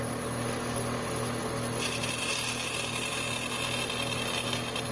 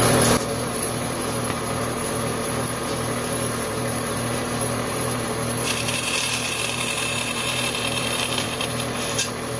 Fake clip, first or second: second